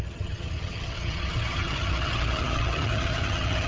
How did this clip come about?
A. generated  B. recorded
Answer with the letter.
A